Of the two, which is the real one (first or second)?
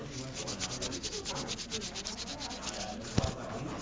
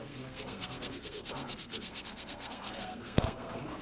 first